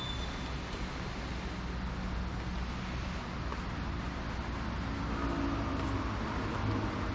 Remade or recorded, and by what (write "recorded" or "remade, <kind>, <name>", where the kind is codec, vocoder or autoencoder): recorded